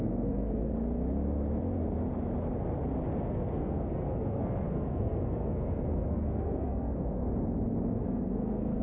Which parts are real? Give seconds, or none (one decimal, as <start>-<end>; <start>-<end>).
0.7-3.2; 7.2-7.9